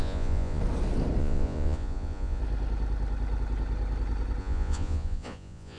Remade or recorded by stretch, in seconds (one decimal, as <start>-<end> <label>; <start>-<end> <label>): 0.0-0.6 remade; 0.6-1.2 recorded; 1.2-2.4 remade; 2.4-4.4 recorded; 4.4-5.8 remade